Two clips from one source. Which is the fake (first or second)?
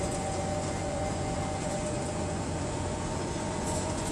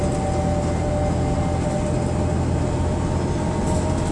first